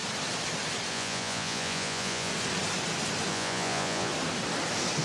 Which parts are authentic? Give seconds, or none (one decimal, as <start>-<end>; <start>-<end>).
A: 0.0-0.9; 2.3-3.3; 4.1-5.0